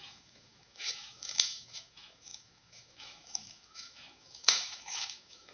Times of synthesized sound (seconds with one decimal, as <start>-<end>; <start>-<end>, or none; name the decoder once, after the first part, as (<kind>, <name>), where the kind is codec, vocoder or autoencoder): 0.0-5.5 (autoencoder, DAC-VAE)